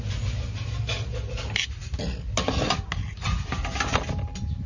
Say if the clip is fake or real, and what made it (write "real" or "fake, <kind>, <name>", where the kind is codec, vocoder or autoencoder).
real